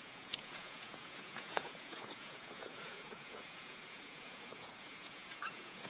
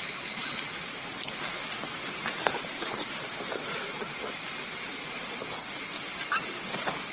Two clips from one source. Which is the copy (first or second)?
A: first